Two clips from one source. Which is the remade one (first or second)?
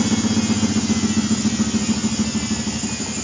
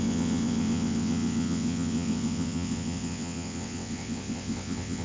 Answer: second